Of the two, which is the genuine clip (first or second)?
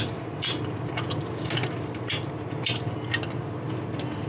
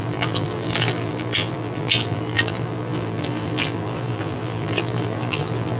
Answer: first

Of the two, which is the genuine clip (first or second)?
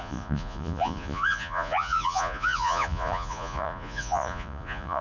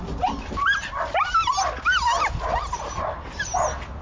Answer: second